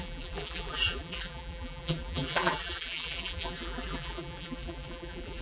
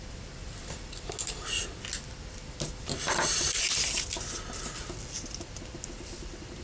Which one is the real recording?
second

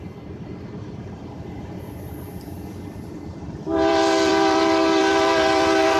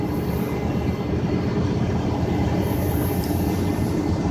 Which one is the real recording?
second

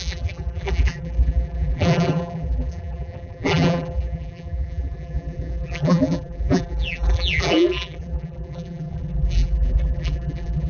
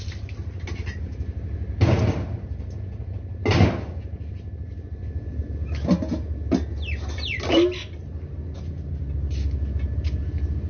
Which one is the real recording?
second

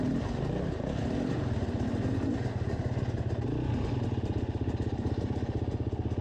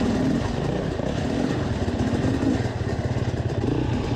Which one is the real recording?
first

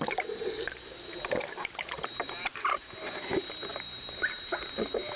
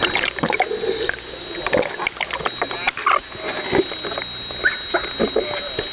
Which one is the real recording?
second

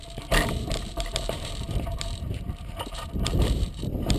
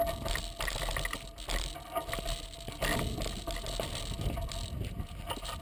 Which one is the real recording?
second